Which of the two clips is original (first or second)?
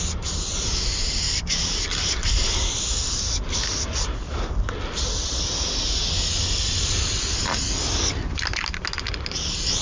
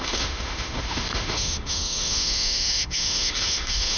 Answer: first